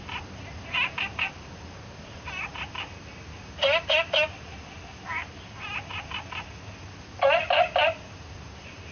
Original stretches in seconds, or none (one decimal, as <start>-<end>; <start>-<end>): 0.0-5.2; 5.7-8.9